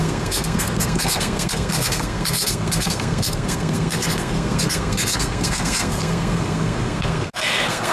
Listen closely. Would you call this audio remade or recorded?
remade